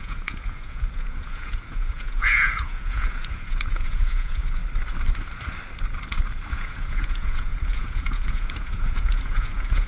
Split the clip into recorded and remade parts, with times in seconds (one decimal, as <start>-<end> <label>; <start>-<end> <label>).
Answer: 0.0-4.6 remade; 4.6-6.5 recorded; 6.5-9.9 remade